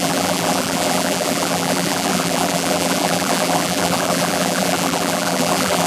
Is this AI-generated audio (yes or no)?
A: yes